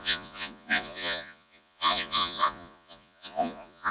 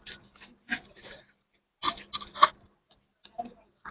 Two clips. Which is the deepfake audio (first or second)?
first